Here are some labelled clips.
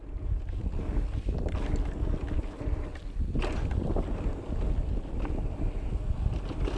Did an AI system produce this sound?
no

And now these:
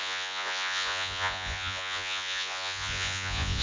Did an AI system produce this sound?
yes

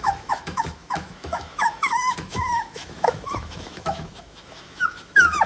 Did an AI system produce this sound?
yes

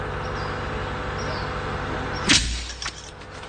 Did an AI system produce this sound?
no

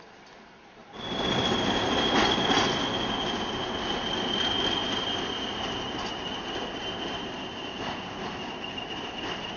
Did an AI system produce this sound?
no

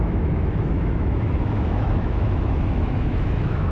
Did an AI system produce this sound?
yes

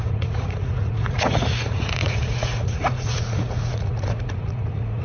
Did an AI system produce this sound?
yes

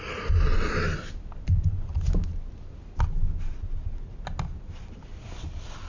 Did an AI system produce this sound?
no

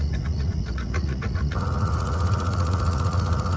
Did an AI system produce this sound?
yes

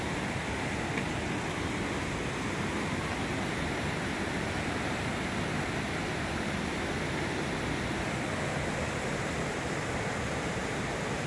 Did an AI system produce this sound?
no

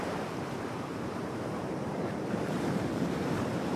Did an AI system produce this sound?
yes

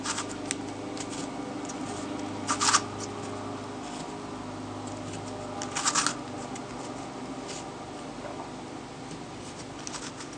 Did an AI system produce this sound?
no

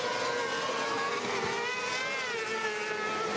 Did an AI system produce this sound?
no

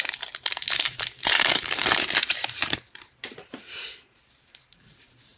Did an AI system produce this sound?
yes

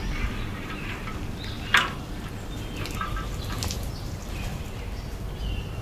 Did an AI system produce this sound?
no